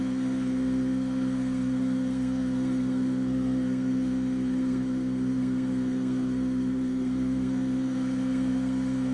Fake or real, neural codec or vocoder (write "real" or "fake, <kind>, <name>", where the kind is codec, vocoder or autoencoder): fake, codec, SNAC